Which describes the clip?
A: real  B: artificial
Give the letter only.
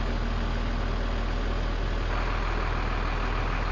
A